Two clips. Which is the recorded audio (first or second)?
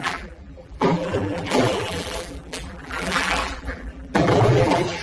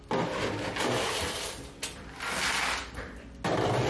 second